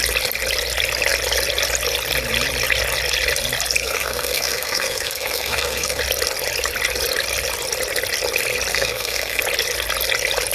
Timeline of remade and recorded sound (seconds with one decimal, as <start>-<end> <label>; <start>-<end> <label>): 0.0-3.8 recorded; 3.8-6.0 remade; 6.0-8.7 recorded; 8.7-9.4 remade; 9.4-10.5 recorded